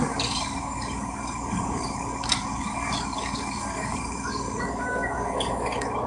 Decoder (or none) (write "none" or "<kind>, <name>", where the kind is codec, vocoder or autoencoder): codec, DAC